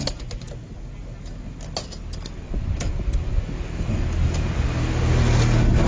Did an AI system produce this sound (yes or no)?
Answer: no